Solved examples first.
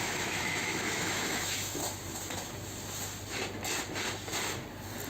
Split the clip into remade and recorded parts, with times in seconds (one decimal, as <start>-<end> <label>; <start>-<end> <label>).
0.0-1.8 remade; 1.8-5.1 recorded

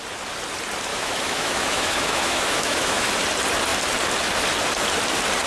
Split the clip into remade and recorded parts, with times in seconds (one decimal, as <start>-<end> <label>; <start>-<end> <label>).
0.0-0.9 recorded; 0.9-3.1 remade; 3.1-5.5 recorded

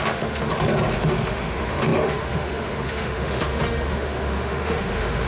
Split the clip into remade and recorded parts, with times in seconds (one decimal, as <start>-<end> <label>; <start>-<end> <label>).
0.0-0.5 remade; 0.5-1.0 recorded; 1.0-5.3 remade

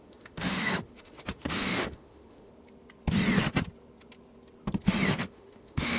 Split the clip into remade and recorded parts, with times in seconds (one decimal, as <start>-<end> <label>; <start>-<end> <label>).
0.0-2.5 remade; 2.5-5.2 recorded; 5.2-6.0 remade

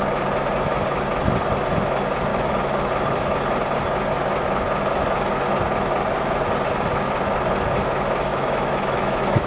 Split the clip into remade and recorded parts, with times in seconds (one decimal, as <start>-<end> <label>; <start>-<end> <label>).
0.0-2.3 recorded; 2.3-2.9 remade; 2.9-8.3 recorded; 8.3-9.5 remade

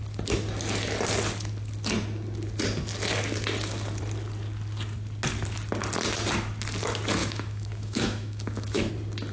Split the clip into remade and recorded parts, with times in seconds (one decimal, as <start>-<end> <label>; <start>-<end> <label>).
0.0-7.2 recorded; 7.2-8.9 remade; 8.9-9.3 recorded

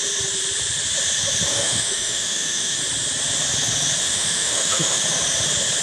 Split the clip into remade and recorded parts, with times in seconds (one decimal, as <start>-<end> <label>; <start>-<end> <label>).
0.0-1.5 recorded; 1.5-2.8 remade; 2.8-4.0 recorded; 4.0-5.0 remade; 5.0-5.8 recorded

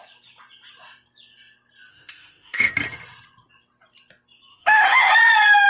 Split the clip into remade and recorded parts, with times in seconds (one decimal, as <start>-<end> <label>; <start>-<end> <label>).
0.0-1.9 recorded; 1.9-2.7 remade; 2.7-4.5 recorded; 4.5-5.1 remade; 5.1-5.7 recorded